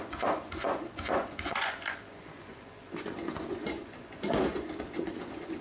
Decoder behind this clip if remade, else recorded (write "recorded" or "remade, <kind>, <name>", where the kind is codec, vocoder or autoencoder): remade, vocoder, Vocos